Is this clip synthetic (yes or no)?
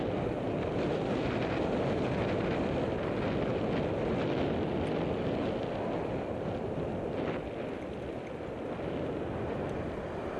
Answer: no